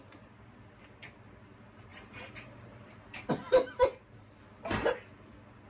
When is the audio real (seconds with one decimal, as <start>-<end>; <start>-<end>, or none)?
0.0-1.9; 3.3-3.9; 4.4-5.7